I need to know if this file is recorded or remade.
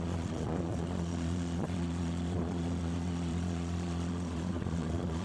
remade